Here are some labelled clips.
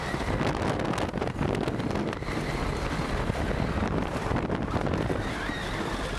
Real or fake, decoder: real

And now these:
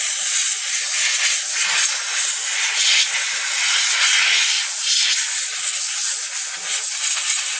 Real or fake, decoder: real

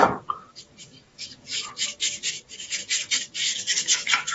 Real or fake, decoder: fake, codec, DAC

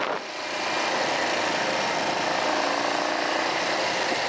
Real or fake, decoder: real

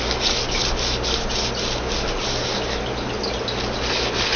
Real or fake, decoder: real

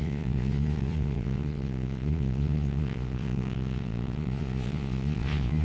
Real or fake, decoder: fake, vocoder, Vocos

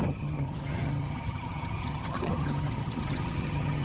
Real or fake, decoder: fake, vocoder, HiFi-GAN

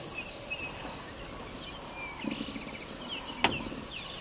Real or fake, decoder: real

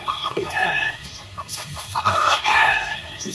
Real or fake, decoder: fake, codec, SNAC